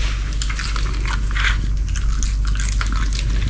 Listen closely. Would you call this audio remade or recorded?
recorded